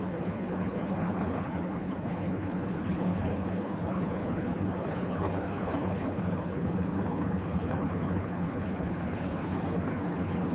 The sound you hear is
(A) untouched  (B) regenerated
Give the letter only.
B